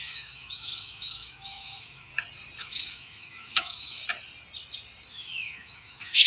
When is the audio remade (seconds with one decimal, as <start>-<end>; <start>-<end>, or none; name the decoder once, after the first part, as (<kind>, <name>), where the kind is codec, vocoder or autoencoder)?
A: 0.0-2.1 (autoencoder, DAC-VAE); 2.6-4.0; 5.1-6.3